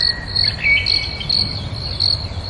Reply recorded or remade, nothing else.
recorded